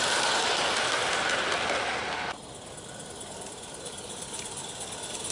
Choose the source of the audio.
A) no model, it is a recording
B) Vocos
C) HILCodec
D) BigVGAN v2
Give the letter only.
A